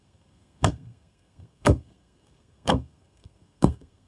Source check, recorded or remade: remade